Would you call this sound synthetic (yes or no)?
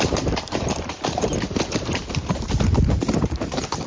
yes